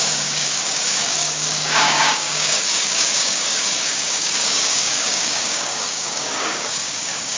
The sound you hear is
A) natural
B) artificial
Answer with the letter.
B